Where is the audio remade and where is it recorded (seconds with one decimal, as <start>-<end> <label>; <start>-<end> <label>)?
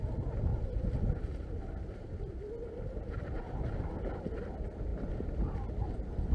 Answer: 0.0-6.3 recorded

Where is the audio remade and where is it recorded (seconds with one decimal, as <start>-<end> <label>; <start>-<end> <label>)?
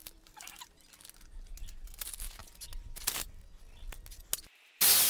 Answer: 0.0-0.7 remade; 0.7-5.1 recorded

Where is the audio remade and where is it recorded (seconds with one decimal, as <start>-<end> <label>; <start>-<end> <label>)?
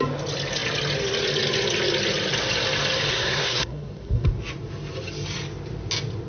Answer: 0.0-3.1 recorded; 3.1-4.3 remade; 4.3-6.3 recorded